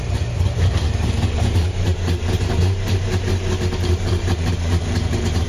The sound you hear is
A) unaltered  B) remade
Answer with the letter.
B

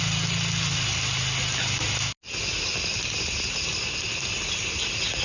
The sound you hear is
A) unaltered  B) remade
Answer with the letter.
A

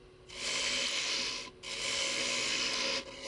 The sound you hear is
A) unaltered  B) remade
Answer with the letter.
A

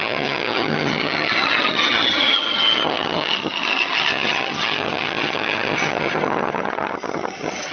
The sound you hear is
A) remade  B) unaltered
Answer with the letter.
A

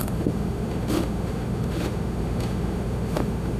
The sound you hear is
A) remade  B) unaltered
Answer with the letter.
A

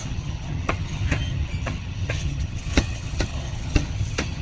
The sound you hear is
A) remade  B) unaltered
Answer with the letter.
A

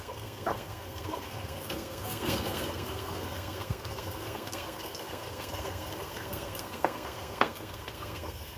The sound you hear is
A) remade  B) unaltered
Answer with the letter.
A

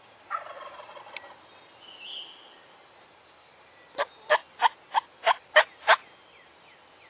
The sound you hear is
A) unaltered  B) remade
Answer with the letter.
A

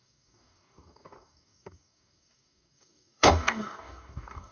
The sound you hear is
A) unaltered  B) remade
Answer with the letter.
B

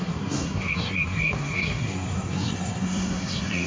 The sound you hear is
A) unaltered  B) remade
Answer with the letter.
B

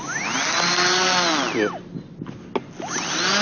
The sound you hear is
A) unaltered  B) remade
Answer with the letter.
A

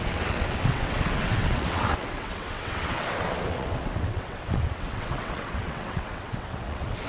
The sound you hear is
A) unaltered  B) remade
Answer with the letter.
B